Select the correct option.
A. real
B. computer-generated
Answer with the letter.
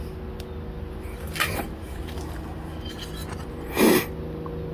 A